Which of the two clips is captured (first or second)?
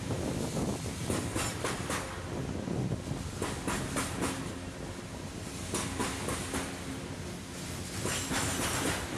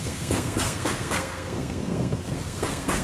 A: first